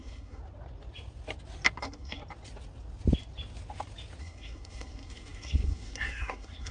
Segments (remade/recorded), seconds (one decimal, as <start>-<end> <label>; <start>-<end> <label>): 0.0-0.4 remade; 0.4-1.8 recorded; 1.8-2.2 remade; 2.2-4.2 recorded; 4.2-6.7 remade